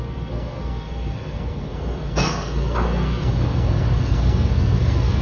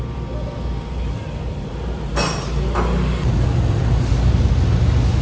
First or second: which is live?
second